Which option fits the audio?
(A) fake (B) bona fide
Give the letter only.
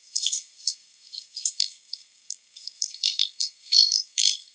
A